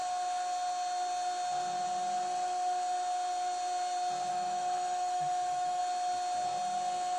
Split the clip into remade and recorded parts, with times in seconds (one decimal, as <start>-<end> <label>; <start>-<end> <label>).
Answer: 0.0-4.3 recorded; 4.3-5.8 remade; 5.8-7.2 recorded